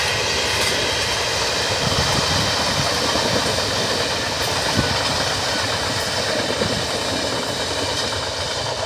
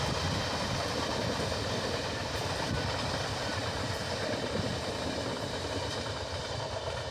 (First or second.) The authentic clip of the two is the first